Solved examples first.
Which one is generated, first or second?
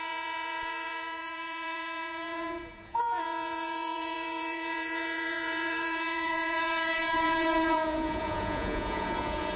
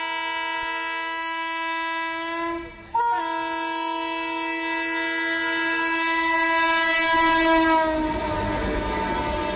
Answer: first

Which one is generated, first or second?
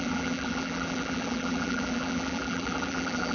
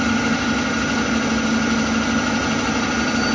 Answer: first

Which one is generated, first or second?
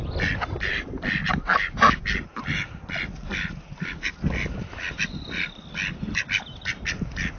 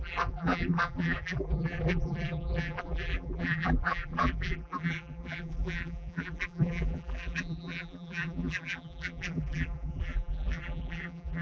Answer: second